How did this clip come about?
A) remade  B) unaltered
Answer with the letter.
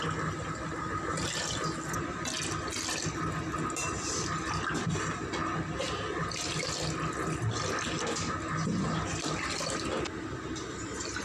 B